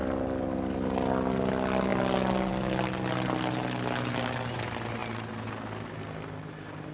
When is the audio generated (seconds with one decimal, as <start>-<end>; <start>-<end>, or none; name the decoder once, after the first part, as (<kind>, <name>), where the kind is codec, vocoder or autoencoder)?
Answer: none